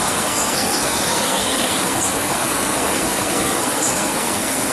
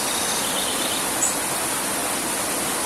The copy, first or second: first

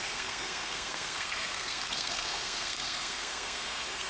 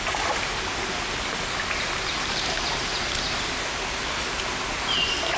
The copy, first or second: first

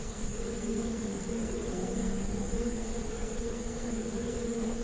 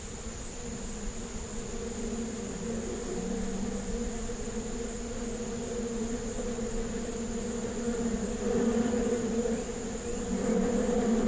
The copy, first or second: first